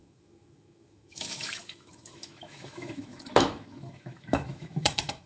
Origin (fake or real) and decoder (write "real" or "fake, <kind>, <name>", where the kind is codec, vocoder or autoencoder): fake, autoencoder, DAC-VAE